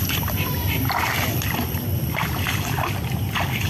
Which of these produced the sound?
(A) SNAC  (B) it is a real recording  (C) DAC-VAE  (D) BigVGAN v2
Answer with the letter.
B